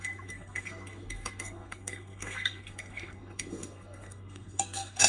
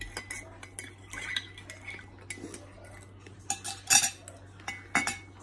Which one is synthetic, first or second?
first